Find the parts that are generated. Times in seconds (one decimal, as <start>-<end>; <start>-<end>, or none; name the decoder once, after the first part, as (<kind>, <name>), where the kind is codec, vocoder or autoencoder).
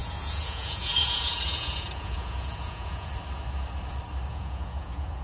0.0-3.1 (vocoder, Vocos); 4.3-5.2